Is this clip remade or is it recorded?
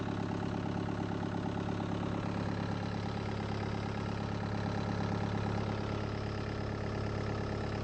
recorded